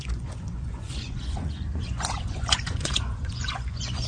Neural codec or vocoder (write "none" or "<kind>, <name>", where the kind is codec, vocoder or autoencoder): vocoder, Vocos